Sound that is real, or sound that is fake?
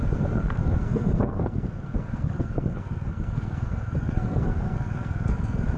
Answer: fake